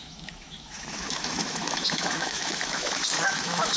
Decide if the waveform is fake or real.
fake